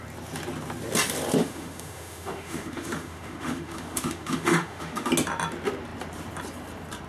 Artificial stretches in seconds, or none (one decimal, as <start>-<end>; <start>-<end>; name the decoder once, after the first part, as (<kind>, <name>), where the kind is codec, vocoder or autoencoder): 1.4-5.1 (autoencoder, DAC-VAE)